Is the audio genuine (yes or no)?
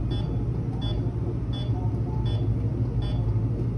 yes